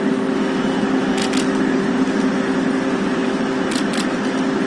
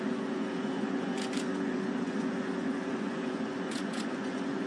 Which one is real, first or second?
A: first